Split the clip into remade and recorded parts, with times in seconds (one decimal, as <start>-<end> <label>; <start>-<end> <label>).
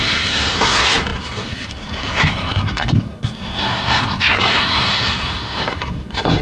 0.0-6.4 remade